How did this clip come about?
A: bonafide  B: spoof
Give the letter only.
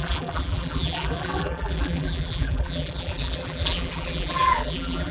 B